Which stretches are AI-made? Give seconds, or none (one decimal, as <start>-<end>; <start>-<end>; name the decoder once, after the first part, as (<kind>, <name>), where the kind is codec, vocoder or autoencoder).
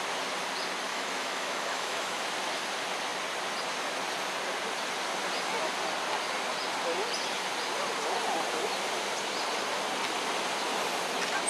0.9-2.2 (autoencoder, DAC-VAE)